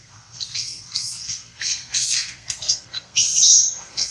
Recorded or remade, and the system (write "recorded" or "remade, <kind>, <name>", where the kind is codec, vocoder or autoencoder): remade, codec, SNAC